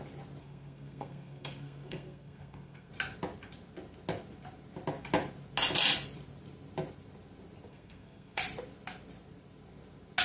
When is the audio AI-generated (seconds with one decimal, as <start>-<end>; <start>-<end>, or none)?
0.4-2.9; 7.7-8.4